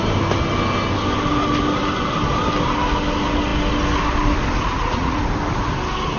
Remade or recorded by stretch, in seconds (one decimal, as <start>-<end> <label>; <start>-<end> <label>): 0.0-4.7 recorded; 4.7-5.2 remade; 5.2-6.2 recorded

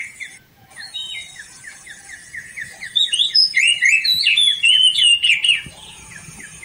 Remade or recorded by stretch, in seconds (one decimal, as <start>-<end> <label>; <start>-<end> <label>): 0.0-6.6 remade